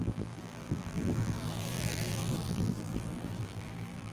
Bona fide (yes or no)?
no